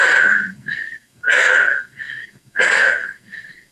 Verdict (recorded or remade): remade